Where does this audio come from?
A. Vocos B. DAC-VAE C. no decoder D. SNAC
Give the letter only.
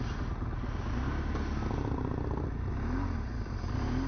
C